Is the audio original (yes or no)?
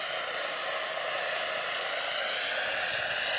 yes